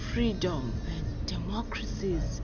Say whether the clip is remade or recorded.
recorded